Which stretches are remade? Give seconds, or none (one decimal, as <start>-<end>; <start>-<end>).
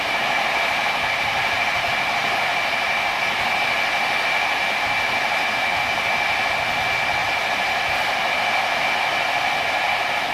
7.2-8.3